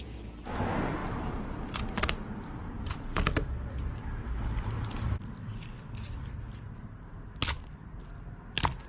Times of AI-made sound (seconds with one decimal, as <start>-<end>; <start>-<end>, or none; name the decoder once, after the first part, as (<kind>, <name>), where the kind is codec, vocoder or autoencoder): 1.0-5.6 (vocoder, BigVGAN v2)